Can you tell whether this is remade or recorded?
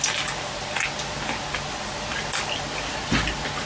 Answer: recorded